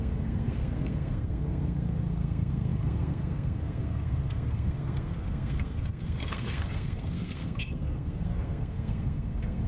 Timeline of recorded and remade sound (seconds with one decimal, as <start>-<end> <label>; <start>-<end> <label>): 0.0-9.7 remade